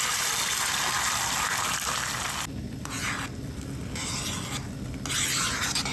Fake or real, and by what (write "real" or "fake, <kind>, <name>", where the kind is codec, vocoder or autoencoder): real